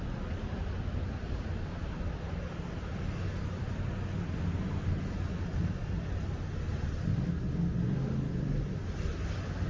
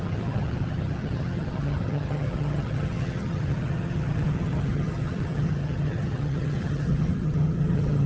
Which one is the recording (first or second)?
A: first